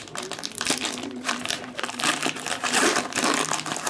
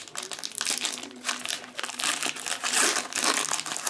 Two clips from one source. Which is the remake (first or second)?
first